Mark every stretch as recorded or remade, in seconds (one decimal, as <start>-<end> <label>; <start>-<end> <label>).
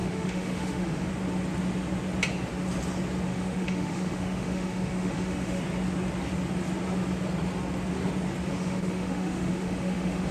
0.0-1.1 remade; 1.1-3.3 recorded; 3.3-5.6 remade; 5.6-8.5 recorded; 8.5-10.3 remade